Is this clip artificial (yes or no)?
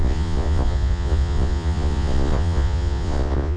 yes